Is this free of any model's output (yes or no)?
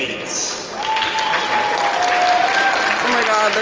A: yes